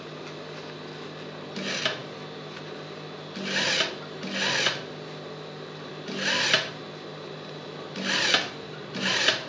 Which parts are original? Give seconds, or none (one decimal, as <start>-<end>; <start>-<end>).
0.0-9.5